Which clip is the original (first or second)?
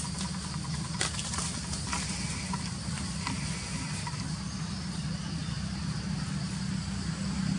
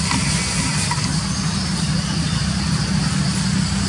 second